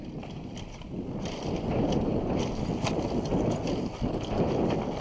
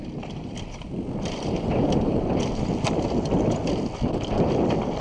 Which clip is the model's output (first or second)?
second